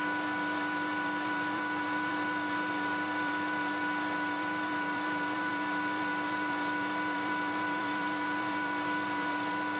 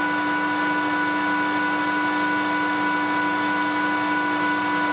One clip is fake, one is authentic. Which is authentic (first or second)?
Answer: second